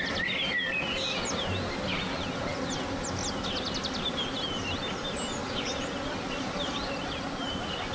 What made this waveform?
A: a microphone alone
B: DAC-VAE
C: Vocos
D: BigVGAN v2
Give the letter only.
A